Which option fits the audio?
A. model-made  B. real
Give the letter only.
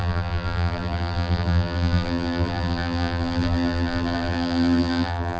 A